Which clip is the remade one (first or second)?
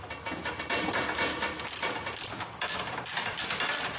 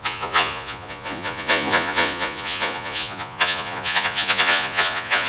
second